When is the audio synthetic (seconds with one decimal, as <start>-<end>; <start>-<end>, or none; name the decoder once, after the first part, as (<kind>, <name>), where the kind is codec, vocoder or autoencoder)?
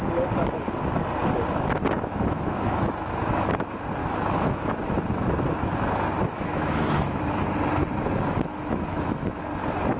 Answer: 2.1-3.5 (autoencoder, DAC-VAE); 4.0-7.3; 8.5-9.4